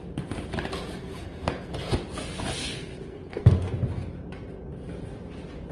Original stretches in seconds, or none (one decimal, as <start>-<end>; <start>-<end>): 0.0-1.0; 1.7-2.6; 3.7-5.7